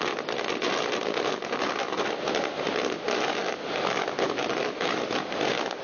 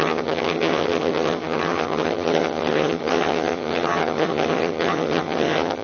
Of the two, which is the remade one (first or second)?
second